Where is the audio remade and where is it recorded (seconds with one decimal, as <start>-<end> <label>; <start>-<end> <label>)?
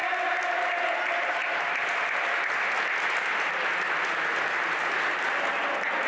0.0-6.1 recorded